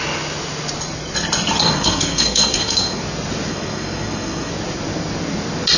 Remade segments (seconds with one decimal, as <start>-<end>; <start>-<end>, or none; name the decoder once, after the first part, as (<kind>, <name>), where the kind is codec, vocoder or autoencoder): 1.6-3.0 (codec, SNAC); 3.5-4.5